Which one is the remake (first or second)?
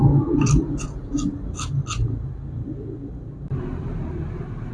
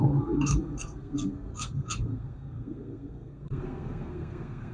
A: second